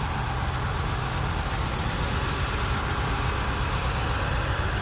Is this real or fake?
real